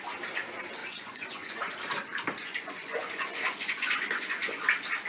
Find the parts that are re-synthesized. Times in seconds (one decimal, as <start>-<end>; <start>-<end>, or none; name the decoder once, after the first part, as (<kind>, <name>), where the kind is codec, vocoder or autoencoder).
0.8-1.7 (vocoder, Vocos); 2.4-4.6